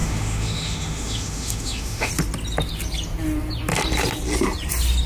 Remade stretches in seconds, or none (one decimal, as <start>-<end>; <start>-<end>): 0.0-2.1